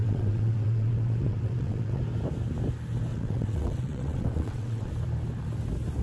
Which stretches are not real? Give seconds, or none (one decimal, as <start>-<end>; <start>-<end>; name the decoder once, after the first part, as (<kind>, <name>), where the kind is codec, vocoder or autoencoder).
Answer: 0.0-2.0 (vocoder, WaveNeXt); 3.1-4.9